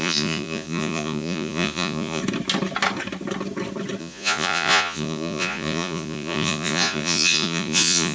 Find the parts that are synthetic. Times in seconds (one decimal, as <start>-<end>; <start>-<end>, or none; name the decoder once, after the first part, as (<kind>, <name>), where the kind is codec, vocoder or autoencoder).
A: 0.0-2.2 (vocoder, Vocos); 4.0-8.1